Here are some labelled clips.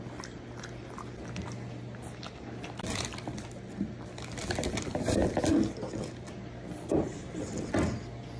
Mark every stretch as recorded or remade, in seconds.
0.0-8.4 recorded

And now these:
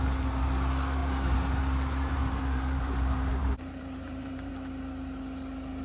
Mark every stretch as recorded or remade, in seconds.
0.0-1.0 recorded; 1.0-4.5 remade; 4.5-5.8 recorded

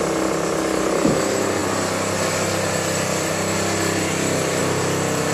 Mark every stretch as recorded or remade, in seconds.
0.0-5.3 recorded